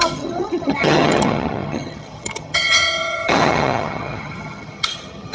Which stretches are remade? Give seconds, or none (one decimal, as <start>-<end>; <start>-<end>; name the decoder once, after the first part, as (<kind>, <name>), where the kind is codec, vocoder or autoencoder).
0.0-5.3 (vocoder, HiFi-GAN)